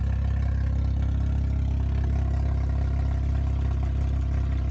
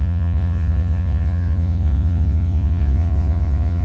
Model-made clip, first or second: second